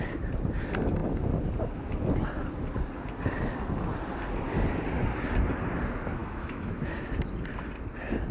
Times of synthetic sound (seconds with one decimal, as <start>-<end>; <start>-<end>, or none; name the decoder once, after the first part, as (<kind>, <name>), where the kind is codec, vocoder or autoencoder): 6.2-7.1 (autoencoder, DAC-VAE)